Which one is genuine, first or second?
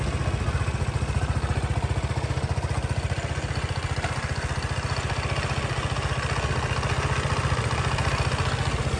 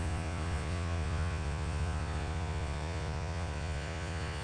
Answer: first